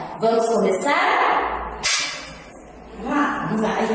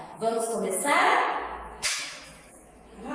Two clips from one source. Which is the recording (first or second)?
first